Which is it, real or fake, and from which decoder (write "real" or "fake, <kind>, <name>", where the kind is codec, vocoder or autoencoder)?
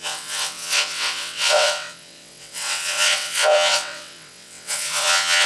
fake, vocoder, WaveNeXt